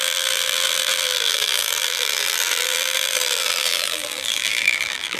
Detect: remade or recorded remade